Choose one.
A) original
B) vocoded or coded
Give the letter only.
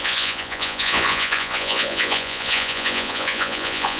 B